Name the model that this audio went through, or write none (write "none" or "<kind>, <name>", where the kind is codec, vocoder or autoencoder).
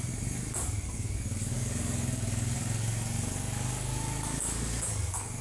codec, DAC